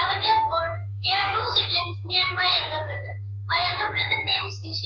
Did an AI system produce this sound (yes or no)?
yes